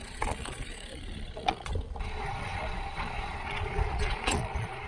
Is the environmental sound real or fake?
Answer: fake